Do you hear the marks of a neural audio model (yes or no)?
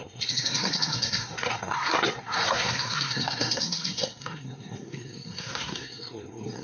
yes